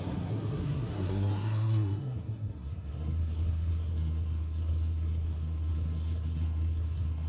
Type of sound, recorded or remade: remade